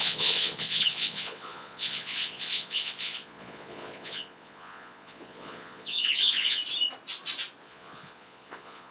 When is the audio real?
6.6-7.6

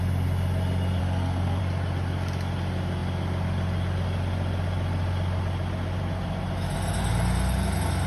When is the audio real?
0.0-1.0; 1.6-8.1

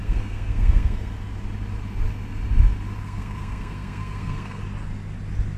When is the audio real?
1.1-3.0; 4.6-5.6

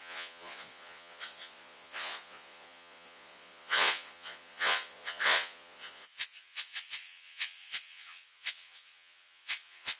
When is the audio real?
none

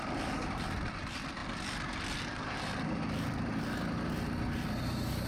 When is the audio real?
0.0-5.3

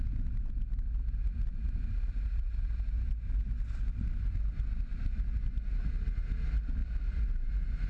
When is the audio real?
0.0-6.8; 7.5-7.9

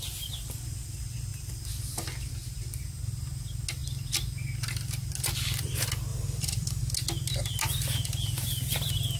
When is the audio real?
0.0-6.1; 6.8-9.2